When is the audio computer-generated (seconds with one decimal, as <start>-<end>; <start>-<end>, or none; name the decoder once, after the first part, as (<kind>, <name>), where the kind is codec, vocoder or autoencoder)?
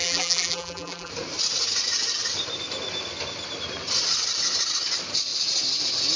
0.0-1.1 (vocoder, BigVGAN v2)